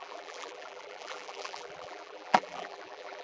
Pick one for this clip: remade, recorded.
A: remade